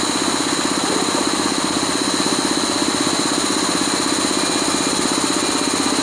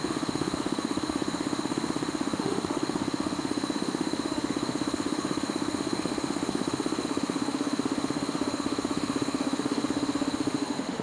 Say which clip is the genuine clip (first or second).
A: first